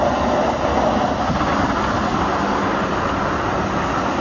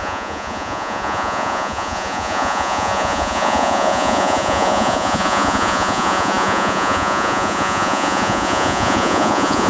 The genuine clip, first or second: first